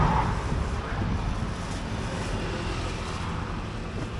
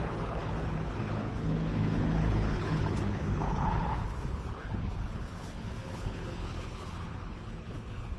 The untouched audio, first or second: first